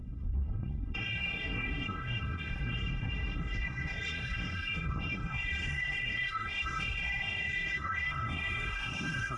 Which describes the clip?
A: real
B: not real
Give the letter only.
B